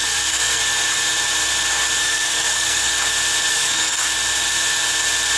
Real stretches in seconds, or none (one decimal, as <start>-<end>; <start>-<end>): 0.6-2.0; 2.9-3.5; 4.0-5.4